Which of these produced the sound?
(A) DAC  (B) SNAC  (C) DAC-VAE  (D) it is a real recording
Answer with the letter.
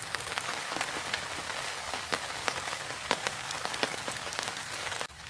A